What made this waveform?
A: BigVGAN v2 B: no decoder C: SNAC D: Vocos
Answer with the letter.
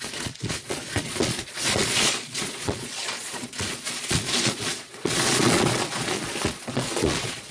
D